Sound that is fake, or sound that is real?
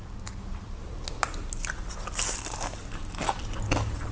real